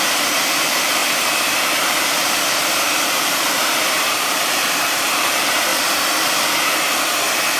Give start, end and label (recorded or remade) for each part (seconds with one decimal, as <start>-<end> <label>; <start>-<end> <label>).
0.0-5.7 remade; 5.7-7.6 recorded